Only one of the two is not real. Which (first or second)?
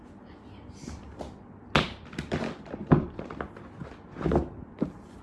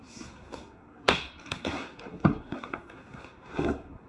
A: second